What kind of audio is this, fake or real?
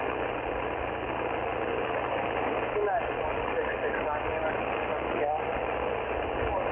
real